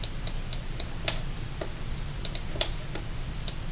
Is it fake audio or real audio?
fake